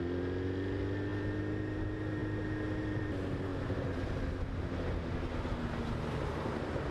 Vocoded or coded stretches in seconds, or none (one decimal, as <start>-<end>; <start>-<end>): none